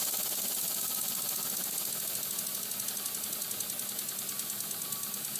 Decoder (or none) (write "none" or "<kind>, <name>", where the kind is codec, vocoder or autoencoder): none